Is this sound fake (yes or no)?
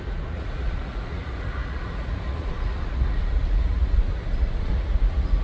yes